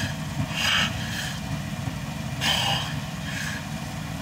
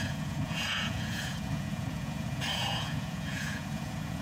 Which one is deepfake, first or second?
second